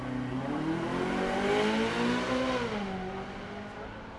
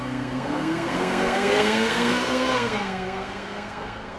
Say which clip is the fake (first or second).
second